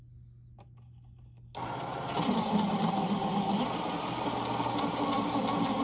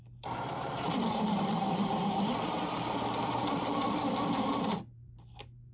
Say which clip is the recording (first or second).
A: first